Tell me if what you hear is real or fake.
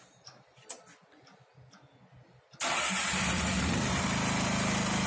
real